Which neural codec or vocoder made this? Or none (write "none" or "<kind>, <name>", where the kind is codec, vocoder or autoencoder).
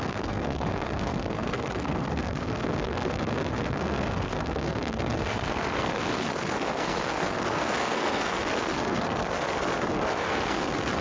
codec, SNAC